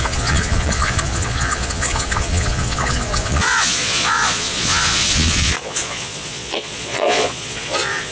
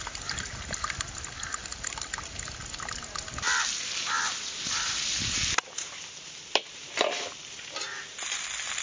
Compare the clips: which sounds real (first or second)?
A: second